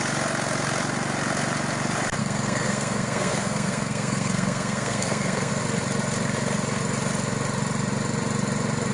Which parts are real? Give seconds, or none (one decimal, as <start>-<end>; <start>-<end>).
0.0-2.2; 5.5-8.9